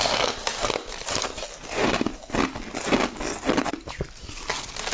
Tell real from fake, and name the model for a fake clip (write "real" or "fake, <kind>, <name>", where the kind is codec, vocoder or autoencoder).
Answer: real